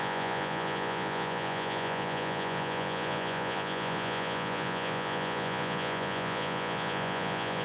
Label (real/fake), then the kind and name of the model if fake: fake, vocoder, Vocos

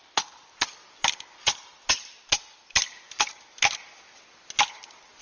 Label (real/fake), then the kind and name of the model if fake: real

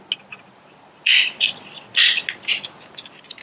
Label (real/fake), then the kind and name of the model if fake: real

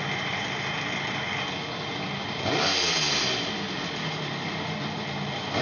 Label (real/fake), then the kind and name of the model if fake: real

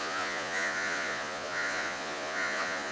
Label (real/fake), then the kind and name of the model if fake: fake, vocoder, Vocos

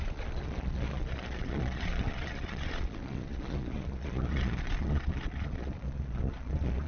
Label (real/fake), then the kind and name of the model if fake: fake, vocoder, Vocos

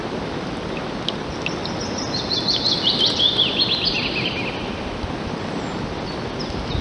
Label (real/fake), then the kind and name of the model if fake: real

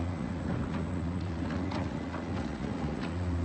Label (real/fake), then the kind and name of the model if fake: fake, vocoder, Vocos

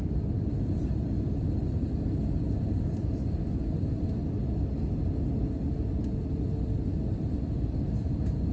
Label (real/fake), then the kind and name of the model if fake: real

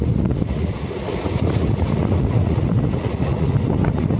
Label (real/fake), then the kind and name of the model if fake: fake, vocoder, Vocos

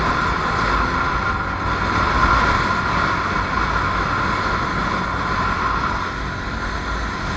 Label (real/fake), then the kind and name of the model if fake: real